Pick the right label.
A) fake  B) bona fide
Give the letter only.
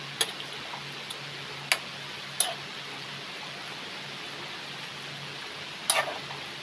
B